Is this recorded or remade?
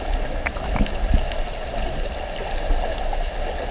recorded